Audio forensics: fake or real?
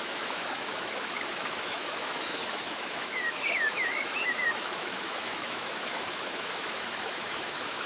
fake